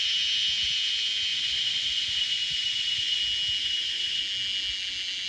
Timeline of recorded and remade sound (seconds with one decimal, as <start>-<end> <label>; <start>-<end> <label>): 0.0-1.3 recorded; 1.3-3.2 remade; 3.2-3.6 recorded; 3.6-4.2 remade; 4.2-5.3 recorded